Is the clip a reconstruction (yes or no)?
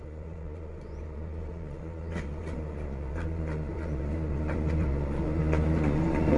yes